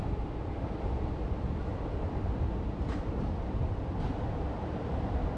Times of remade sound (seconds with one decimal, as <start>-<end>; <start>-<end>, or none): 0.0-5.4